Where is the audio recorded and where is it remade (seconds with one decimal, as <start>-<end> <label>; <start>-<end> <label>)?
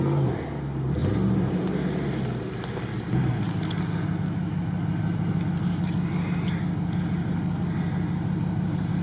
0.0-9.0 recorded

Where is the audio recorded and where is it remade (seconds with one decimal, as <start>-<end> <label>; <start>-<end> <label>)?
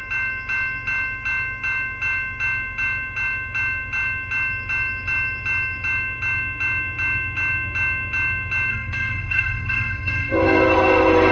0.0-8.7 recorded; 8.7-11.3 remade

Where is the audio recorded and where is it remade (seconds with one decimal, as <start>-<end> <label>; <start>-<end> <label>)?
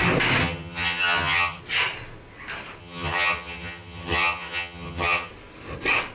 0.0-0.4 recorded; 0.4-1.6 remade; 1.6-2.8 recorded; 2.8-5.3 remade; 5.3-6.1 recorded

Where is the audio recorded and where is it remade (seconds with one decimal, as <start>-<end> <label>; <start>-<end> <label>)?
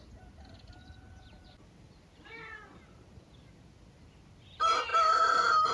0.0-5.7 recorded